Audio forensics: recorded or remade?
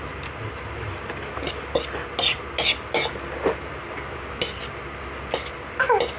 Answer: recorded